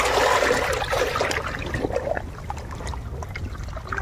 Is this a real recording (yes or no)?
yes